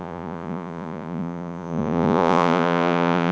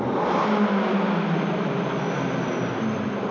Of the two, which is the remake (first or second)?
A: first